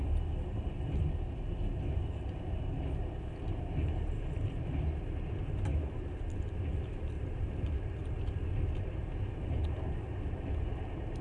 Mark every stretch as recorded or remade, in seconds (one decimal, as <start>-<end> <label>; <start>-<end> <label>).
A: 0.0-11.2 recorded